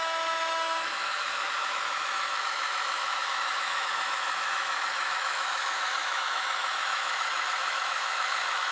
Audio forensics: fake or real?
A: fake